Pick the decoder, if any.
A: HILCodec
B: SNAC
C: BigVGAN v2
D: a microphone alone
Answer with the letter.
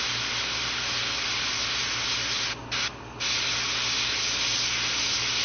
D